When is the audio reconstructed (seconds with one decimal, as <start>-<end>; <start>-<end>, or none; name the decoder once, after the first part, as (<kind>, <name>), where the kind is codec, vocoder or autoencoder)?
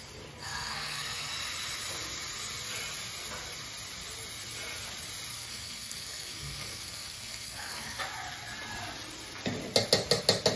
0.4-1.3 (codec, SNAC); 5.3-8.0